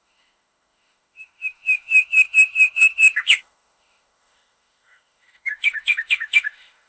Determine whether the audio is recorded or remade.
remade